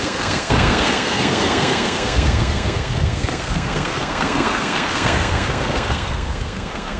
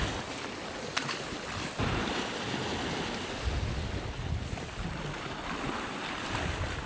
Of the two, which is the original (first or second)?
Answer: second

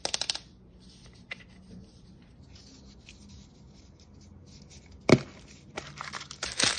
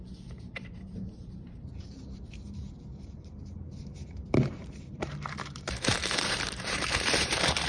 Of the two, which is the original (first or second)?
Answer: first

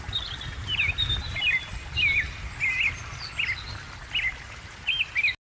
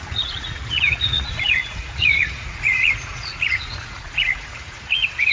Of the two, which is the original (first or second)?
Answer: first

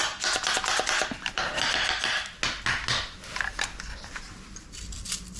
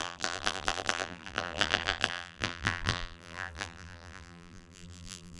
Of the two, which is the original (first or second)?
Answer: first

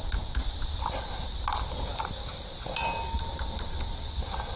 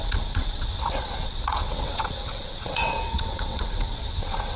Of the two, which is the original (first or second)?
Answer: first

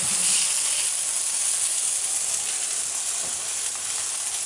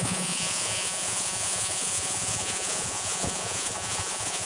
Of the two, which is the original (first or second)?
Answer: first